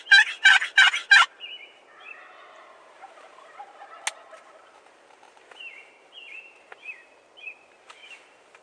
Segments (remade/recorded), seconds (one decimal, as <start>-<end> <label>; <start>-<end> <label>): 0.0-1.0 remade; 1.0-2.6 recorded; 2.6-3.3 remade; 3.3-4.3 recorded; 4.3-8.6 remade